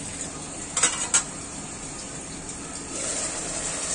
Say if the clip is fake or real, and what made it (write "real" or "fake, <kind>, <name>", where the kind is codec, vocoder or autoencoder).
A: real